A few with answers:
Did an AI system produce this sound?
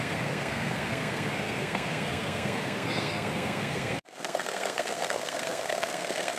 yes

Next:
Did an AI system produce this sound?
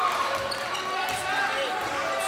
no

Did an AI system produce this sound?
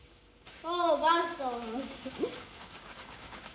yes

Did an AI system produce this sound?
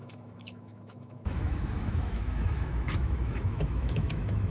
yes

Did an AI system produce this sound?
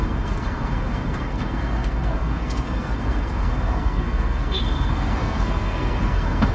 yes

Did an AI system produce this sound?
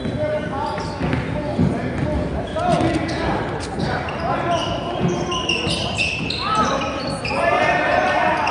no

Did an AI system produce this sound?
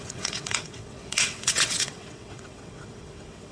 yes